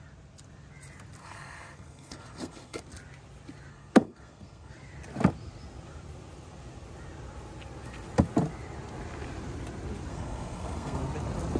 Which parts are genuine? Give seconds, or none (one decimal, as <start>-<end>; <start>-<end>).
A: 0.0-1.2; 2.8-3.7; 4.7-10.1; 11.0-11.6